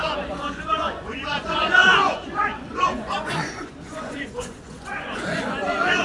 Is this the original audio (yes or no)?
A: no